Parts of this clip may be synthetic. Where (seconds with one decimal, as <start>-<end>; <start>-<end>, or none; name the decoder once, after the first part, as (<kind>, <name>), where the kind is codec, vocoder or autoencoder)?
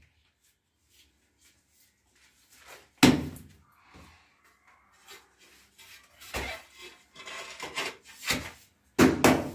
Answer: none